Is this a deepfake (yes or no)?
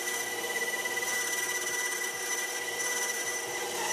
yes